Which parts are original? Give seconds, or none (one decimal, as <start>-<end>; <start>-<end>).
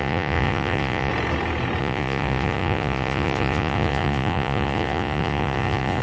1.1-1.8